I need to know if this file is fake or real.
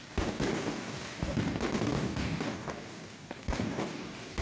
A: fake